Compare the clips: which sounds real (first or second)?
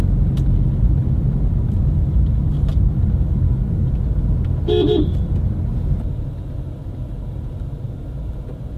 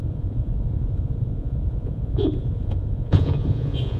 first